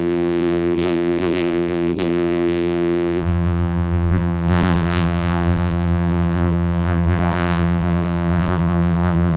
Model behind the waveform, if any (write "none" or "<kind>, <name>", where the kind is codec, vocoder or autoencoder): vocoder, BigVGAN v2